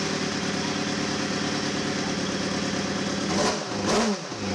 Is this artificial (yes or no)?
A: no